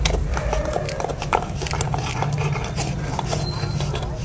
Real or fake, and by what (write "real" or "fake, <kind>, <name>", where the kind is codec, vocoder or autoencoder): real